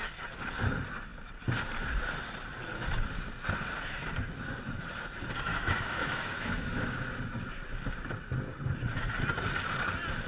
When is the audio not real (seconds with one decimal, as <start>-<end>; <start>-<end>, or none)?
5.5-7.1

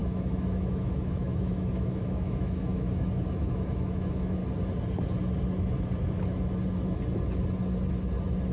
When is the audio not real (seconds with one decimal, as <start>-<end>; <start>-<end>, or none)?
0.0-4.4